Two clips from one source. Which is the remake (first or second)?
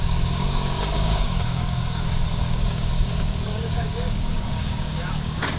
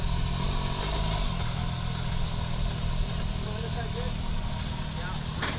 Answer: first